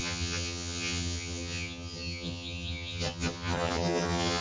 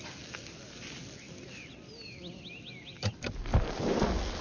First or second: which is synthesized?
first